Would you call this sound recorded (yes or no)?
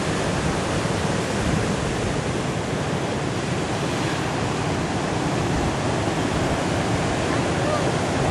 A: yes